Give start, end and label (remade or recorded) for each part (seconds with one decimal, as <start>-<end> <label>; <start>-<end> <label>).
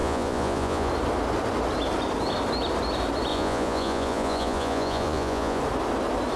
0.0-0.9 remade; 0.9-3.3 recorded; 3.3-5.6 remade; 5.6-6.4 recorded